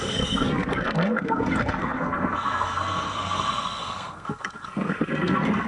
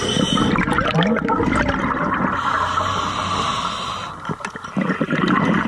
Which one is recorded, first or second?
second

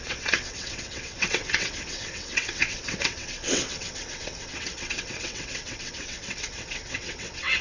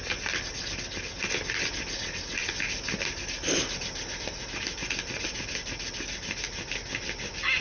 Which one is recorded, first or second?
second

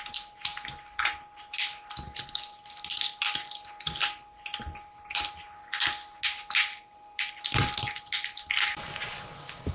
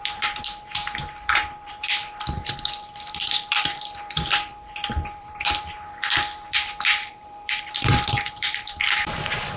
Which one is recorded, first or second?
first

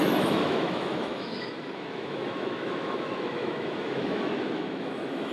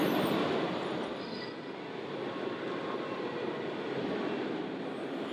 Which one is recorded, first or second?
second